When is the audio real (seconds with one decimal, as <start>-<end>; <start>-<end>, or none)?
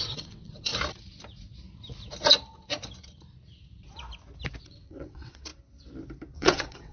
0.7-4.6; 5.5-6.3